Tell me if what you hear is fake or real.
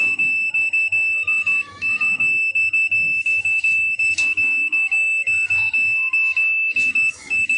fake